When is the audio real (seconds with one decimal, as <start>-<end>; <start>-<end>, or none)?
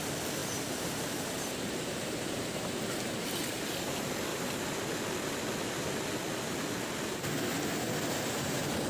0.0-0.4; 3.9-4.3; 4.9-8.9